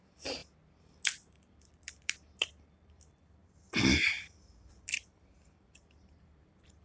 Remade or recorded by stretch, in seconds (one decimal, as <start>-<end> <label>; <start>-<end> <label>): 0.0-0.4 remade; 0.4-1.7 recorded; 1.7-3.4 remade; 3.4-4.7 recorded; 4.7-6.8 remade